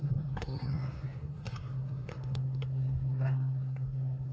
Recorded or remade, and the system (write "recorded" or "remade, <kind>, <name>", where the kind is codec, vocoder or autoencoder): remade, codec, SNAC